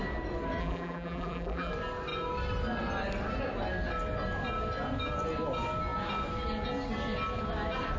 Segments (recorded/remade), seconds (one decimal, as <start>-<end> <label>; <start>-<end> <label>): 0.0-0.6 recorded; 0.6-1.7 remade; 1.7-8.0 recorded